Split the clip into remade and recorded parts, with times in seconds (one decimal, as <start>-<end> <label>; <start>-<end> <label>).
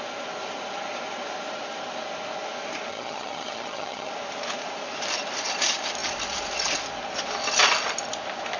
0.0-2.9 recorded; 2.9-4.1 remade; 4.1-8.6 recorded